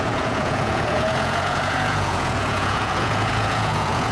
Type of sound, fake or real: fake